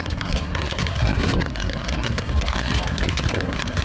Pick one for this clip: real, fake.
fake